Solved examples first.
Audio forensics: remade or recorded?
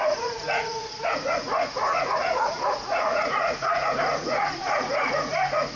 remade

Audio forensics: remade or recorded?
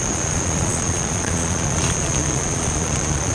remade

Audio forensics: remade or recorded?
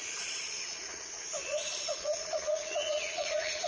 remade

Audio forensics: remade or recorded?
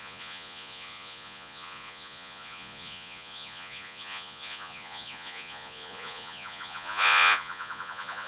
remade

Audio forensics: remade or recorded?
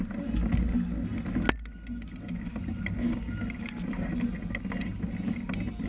recorded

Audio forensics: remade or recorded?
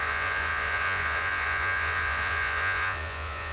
remade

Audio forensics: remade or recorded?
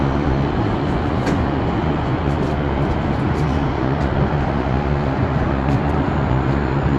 remade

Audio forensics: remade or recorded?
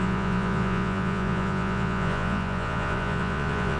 remade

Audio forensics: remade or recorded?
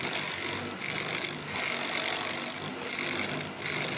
recorded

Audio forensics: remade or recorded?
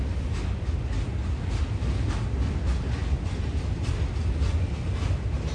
recorded